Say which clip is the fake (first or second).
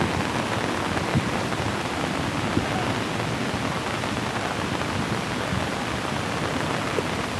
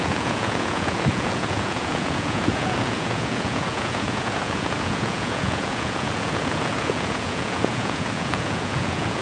second